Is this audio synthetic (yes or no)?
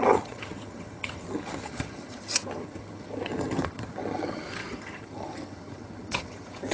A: yes